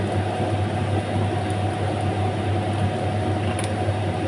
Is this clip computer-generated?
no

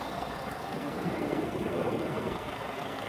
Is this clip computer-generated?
yes